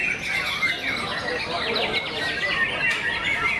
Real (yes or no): yes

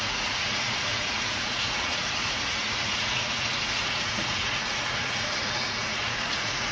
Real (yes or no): no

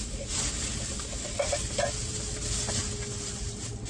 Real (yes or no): yes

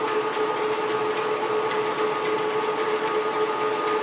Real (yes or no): yes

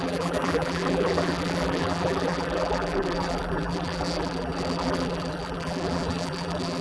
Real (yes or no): no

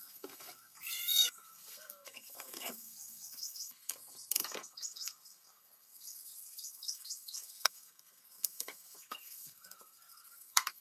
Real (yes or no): no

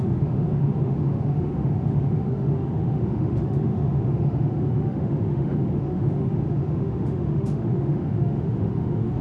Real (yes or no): no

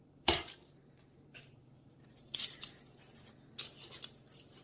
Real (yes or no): no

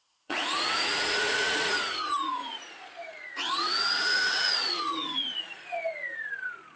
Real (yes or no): no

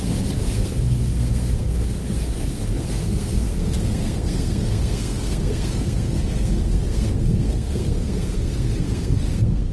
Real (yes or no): no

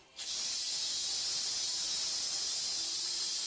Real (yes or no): yes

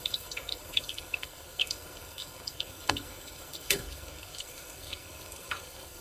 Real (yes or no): no